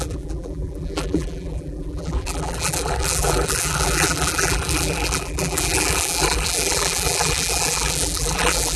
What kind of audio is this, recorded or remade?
remade